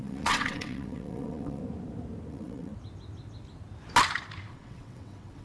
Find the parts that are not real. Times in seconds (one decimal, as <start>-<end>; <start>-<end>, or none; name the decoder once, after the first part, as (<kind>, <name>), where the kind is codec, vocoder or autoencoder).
0.0-1.6 (vocoder, WaveNeXt); 2.3-2.7; 4.5-5.4